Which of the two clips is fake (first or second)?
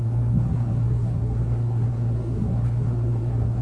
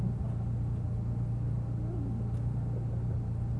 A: first